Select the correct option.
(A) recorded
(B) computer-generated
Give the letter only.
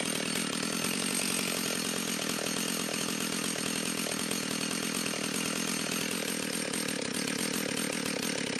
A